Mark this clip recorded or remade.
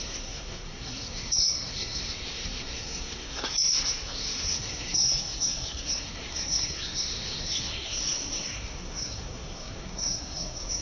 remade